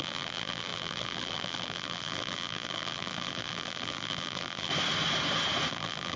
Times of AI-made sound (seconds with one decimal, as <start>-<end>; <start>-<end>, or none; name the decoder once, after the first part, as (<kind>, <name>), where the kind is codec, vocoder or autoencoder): 0.0-4.7 (vocoder, BigVGAN v2); 5.7-6.2